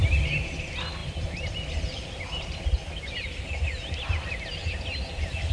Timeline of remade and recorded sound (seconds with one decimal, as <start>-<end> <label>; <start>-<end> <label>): 0.0-1.0 recorded; 1.0-3.6 remade; 3.6-5.5 recorded